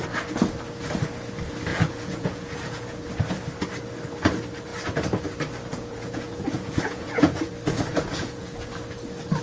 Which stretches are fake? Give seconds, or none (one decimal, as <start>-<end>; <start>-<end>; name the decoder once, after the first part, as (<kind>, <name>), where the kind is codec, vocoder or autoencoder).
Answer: 1.7-3.1 (vocoder, Vocos); 5.7-7.5; 7.9-8.7